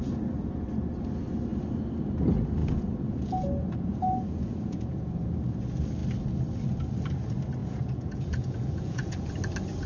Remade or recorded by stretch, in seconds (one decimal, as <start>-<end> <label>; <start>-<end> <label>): 0.0-2.6 recorded; 2.6-5.0 remade; 5.0-7.6 recorded; 7.6-9.3 remade; 9.3-9.9 recorded

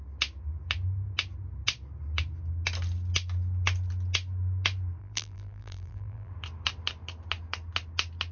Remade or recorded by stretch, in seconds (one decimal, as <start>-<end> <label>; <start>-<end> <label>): 0.0-5.0 recorded; 5.0-6.3 remade; 6.3-8.3 recorded